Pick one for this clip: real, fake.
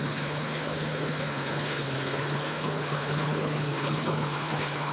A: fake